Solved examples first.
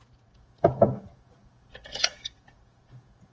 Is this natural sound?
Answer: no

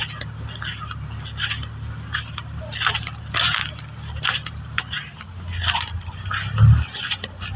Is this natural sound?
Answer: yes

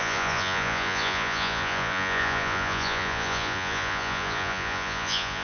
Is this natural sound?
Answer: no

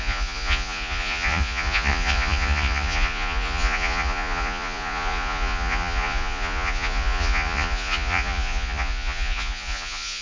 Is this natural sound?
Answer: no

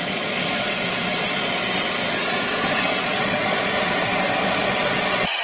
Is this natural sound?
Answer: no